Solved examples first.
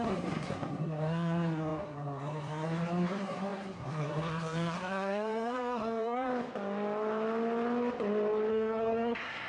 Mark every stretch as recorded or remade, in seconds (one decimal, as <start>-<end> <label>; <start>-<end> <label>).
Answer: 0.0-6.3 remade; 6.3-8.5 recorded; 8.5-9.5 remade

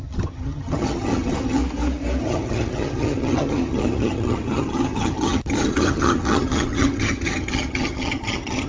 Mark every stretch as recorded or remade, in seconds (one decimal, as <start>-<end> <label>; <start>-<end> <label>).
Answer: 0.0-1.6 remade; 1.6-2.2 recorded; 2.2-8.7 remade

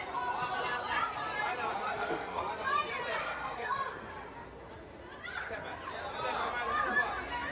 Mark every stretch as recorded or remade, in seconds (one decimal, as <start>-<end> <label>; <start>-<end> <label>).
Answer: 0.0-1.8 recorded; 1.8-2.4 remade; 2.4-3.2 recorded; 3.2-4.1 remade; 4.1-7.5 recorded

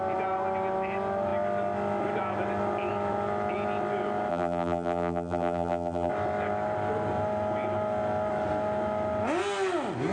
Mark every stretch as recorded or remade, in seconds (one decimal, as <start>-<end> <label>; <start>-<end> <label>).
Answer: 0.0-4.3 recorded; 4.3-6.1 remade; 6.1-10.1 recorded